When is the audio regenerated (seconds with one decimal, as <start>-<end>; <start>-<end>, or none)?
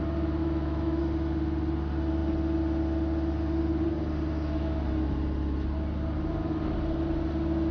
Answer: 0.4-1.0